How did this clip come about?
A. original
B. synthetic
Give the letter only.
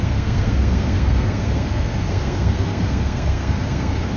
B